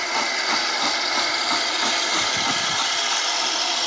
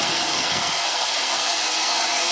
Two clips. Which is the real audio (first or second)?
first